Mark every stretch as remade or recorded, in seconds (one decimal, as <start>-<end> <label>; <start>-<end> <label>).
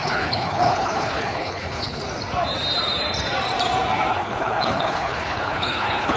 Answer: 0.0-2.0 remade; 2.0-4.1 recorded; 4.1-6.2 remade